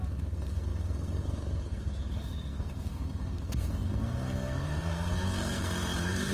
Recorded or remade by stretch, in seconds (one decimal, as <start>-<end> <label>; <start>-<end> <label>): 0.0-6.3 remade

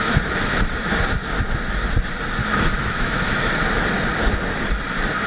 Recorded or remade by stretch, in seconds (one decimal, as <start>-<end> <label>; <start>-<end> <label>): 0.0-2.4 recorded; 2.4-3.5 remade; 3.5-5.3 recorded

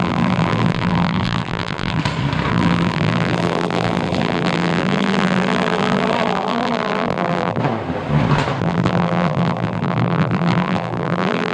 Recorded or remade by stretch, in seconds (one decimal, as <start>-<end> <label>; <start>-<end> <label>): 0.0-2.0 remade; 2.0-2.5 recorded; 2.5-7.6 remade; 7.6-8.6 recorded; 8.6-11.5 remade

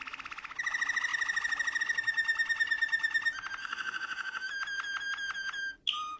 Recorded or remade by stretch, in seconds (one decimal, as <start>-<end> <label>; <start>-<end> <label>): 0.0-3.6 recorded; 3.6-4.5 remade; 4.5-6.2 recorded